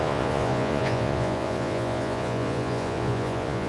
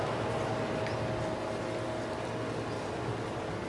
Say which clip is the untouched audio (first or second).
second